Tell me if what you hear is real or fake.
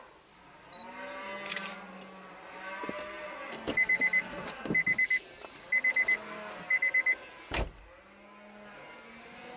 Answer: real